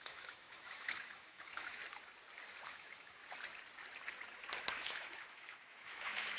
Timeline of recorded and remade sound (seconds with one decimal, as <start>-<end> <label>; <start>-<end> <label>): 0.0-1.8 remade; 1.8-2.6 recorded; 2.6-3.2 remade; 3.2-4.6 recorded; 4.6-6.4 remade